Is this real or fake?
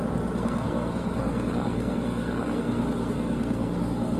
fake